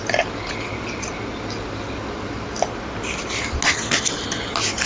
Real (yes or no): yes